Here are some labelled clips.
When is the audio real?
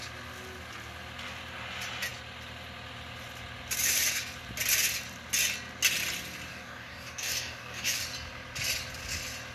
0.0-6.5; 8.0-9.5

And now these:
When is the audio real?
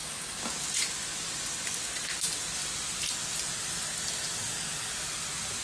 0.0-4.3; 4.9-5.6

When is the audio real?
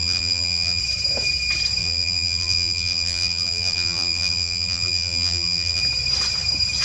0.8-1.8; 5.8-6.8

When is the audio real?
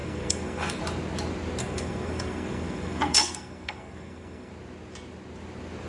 0.8-1.6; 4.5-5.9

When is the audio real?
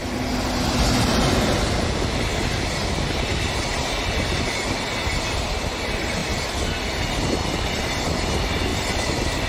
0.0-8.7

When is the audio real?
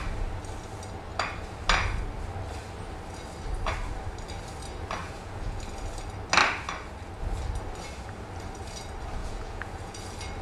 0.0-5.0; 5.6-9.2; 10.0-10.4